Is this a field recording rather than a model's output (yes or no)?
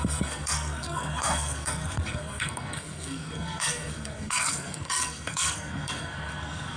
no